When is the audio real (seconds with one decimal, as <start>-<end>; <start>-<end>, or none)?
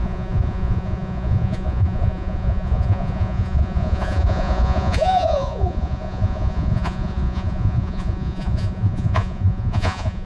none